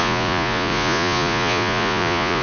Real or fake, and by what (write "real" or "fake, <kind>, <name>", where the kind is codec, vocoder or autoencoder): fake, vocoder, Vocos